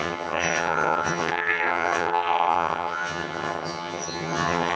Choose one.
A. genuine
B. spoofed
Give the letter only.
B